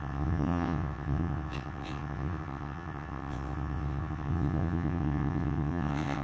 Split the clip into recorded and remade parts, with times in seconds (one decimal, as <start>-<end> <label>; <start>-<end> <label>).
0.0-6.2 remade